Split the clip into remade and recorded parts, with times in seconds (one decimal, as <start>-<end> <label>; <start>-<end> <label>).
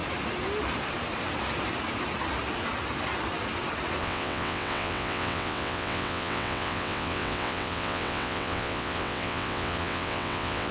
0.0-4.0 recorded; 4.0-10.7 remade